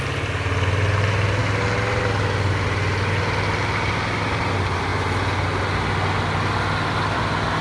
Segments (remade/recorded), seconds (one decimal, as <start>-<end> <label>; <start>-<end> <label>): 0.0-7.6 recorded